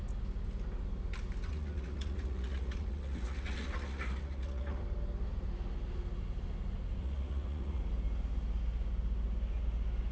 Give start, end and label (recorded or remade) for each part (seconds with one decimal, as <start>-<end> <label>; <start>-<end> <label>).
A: 0.0-1.5 recorded; 1.5-4.8 remade; 4.8-7.0 recorded; 7.0-7.8 remade; 7.8-10.1 recorded